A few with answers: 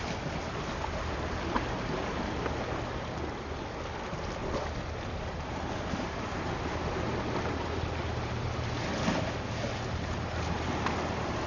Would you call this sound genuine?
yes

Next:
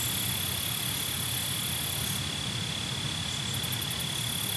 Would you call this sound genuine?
yes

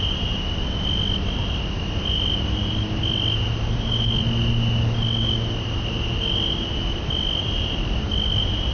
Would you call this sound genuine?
yes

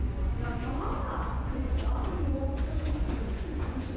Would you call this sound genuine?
no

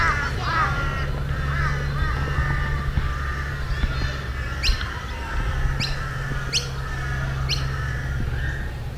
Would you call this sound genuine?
yes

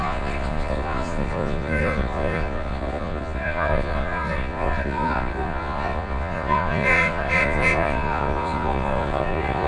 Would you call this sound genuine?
no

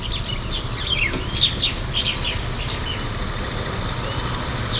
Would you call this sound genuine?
yes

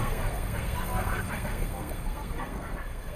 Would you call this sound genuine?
no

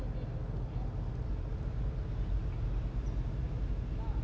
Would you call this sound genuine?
yes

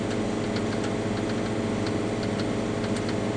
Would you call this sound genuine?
yes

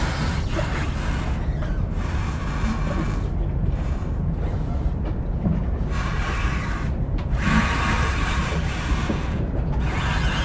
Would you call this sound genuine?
yes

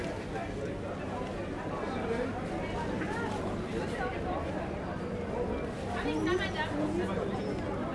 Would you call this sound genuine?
yes